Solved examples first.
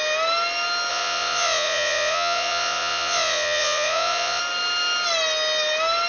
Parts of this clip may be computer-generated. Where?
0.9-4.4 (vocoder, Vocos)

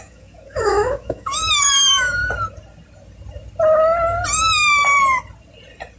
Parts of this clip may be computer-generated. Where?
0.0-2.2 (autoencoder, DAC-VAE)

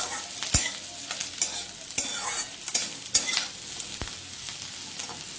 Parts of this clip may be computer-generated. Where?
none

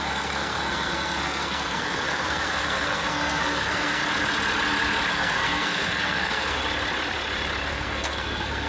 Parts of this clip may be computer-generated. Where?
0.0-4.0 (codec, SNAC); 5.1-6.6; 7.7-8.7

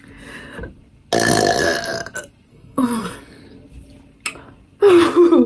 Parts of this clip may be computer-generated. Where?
2.5-3.4 (codec, SNAC)

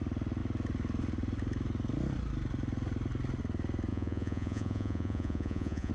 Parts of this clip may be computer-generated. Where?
3.9-5.9 (vocoder, Vocos)